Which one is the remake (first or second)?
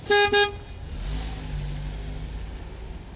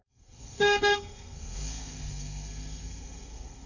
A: second